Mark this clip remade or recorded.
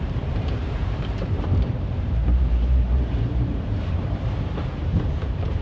remade